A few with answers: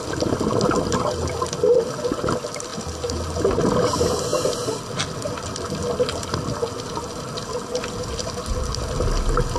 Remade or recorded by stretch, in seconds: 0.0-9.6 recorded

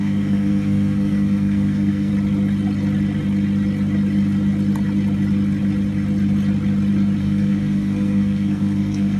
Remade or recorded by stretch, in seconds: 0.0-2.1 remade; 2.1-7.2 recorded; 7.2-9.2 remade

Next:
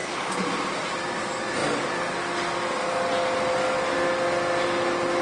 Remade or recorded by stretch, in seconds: 0.0-5.2 recorded